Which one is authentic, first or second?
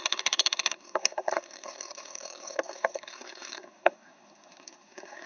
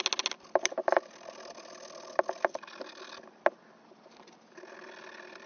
second